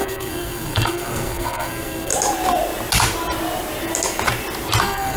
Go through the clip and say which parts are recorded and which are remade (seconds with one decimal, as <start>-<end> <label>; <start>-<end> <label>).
0.0-2.1 remade; 2.1-4.8 recorded; 4.8-5.2 remade